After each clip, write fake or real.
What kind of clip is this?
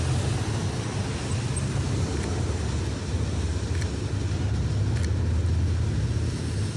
real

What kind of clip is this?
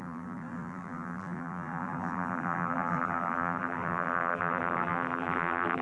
fake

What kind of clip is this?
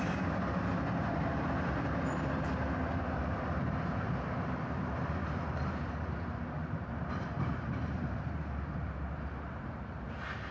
fake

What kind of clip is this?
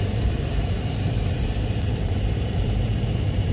fake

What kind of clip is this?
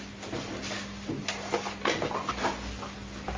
real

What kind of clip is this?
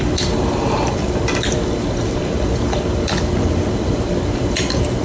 fake